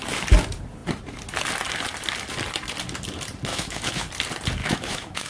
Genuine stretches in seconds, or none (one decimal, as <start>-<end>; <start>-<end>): 0.0-3.5; 4.1-4.6